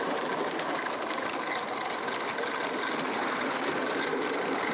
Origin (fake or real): real